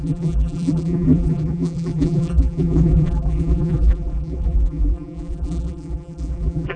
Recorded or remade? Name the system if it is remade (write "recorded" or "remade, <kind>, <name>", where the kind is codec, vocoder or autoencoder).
remade, vocoder, BigVGAN v2